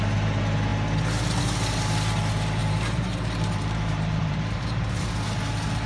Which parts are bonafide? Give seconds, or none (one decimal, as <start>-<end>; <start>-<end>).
0.0-2.6; 5.0-5.9